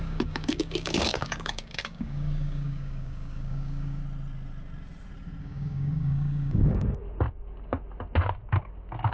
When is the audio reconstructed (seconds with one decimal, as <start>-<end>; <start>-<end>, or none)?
0.0-4.0; 5.4-7.0